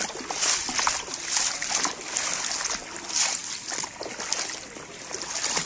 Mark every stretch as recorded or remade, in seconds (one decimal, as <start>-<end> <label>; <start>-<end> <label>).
0.0-5.7 recorded